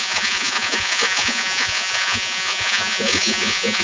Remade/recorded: remade